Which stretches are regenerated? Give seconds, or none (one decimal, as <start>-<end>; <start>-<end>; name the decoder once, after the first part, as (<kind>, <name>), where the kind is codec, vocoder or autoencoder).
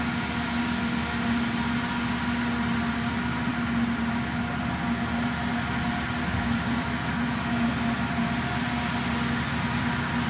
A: none